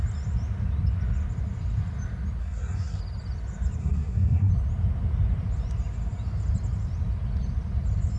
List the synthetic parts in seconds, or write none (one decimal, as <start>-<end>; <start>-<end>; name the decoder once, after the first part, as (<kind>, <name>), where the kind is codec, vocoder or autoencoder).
2.4-3.0 (codec, SNAC); 3.8-4.5